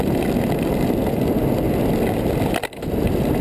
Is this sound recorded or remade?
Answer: recorded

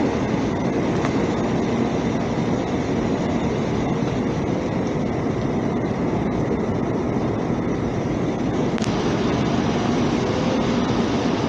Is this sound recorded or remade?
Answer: recorded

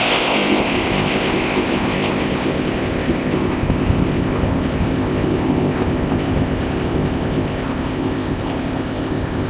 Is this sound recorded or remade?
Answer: remade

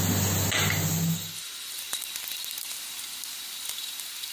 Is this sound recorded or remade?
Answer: recorded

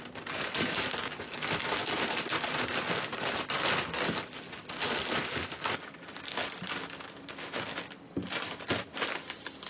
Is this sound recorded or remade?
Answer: recorded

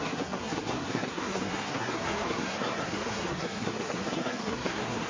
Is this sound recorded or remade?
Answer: remade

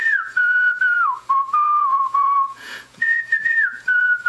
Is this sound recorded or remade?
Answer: remade